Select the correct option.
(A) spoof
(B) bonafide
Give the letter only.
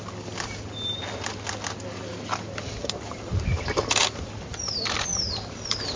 A